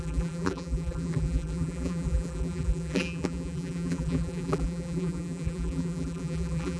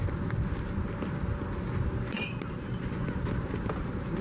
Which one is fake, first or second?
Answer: first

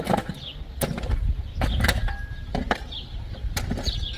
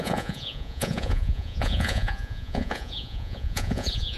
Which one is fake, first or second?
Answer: second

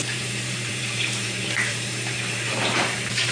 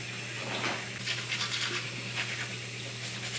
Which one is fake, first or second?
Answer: first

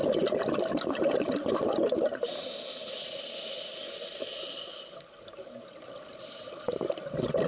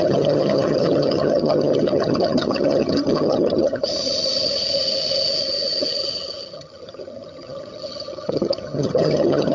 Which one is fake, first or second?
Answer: second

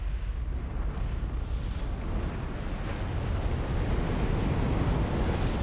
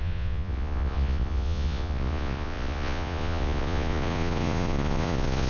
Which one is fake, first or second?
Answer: second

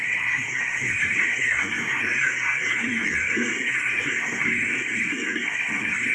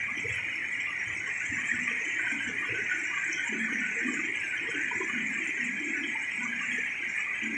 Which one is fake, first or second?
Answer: first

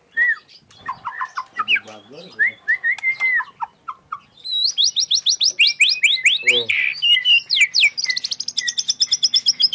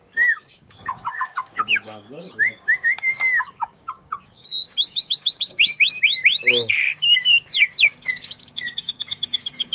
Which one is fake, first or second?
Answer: second